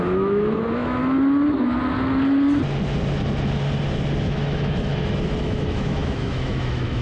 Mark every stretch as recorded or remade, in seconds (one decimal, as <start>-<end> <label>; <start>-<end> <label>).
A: 0.0-1.0 remade; 1.0-4.2 recorded; 4.2-4.9 remade; 4.9-5.4 recorded; 5.4-7.0 remade